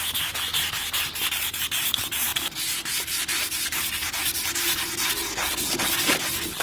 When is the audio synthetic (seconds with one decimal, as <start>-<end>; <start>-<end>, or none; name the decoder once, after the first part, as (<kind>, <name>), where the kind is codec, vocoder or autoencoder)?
none